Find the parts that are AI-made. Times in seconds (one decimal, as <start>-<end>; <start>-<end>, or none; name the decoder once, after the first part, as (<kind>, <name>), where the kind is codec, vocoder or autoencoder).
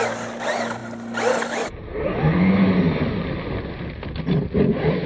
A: none